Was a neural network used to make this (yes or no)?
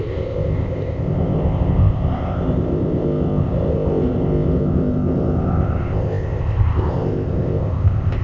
yes